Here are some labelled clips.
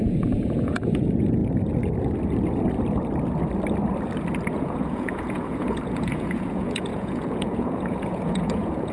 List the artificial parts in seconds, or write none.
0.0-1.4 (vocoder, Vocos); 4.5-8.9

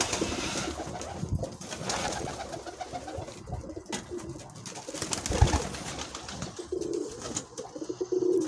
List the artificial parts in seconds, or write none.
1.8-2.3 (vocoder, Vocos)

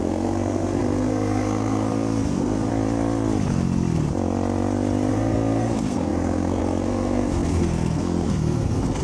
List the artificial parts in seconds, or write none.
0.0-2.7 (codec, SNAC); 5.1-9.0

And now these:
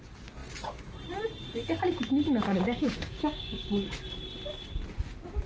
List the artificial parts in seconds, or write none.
2.5-3.7 (codec, DAC)

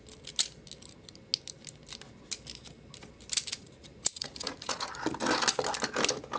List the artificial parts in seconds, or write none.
3.5-4.9 (vocoder, Vocos)